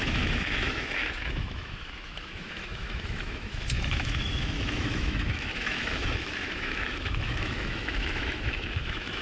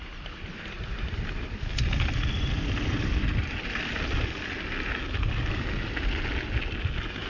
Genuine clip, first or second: second